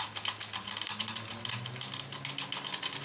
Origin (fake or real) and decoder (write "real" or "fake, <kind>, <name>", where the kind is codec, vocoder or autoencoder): real